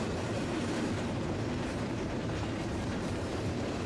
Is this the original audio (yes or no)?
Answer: no